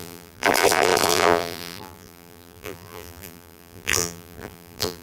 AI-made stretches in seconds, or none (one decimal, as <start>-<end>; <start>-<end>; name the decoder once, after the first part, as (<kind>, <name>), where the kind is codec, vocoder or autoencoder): 0.0-5.0 (vocoder, BigVGAN v2)